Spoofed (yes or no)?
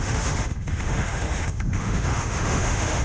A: yes